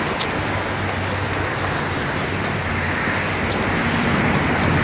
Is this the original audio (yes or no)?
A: yes